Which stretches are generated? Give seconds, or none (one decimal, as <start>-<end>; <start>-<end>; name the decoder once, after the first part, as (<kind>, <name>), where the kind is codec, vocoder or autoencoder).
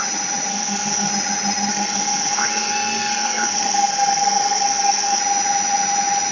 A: 0.5-1.1 (codec, SNAC); 1.7-5.2